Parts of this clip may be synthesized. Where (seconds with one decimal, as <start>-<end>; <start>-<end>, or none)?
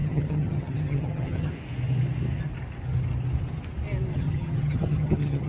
0.0-1.5; 4.1-5.5